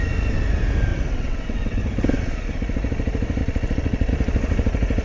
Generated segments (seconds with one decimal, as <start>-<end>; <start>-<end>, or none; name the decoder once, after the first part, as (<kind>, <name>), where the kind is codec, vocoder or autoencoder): 0.9-1.8 (vocoder, WaveNeXt); 3.4-4.1